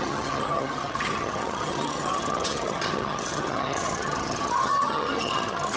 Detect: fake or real fake